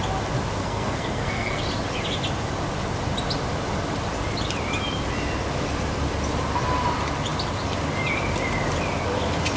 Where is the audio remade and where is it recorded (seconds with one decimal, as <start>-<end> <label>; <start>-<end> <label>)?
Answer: 0.0-0.6 recorded; 0.6-1.6 remade; 1.6-9.6 recorded